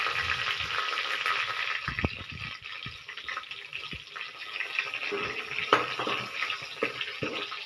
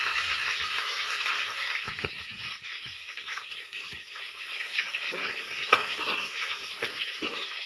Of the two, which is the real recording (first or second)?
first